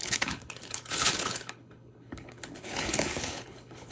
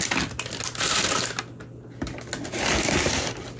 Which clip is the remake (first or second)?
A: first